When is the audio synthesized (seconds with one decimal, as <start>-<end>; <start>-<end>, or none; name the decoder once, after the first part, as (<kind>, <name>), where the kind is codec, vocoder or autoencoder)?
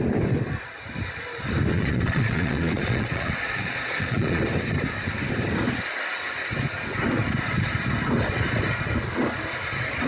1.7-4.4 (vocoder, Vocos)